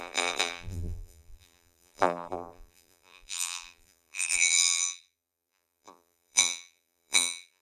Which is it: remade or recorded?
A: remade